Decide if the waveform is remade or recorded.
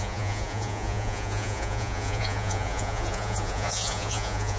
remade